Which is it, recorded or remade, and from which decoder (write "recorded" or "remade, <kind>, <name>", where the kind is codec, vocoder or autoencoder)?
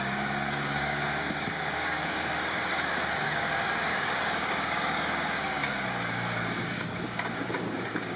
remade, codec, DAC